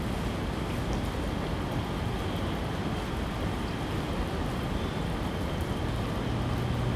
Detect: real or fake real